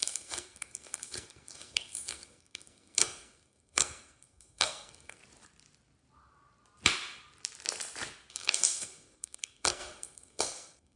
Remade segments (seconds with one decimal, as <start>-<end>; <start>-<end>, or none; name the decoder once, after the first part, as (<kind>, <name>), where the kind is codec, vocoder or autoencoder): 0.0-5.2 (codec, SNAC); 8.3-11.0